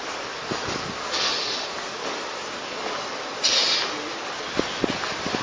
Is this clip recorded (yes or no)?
yes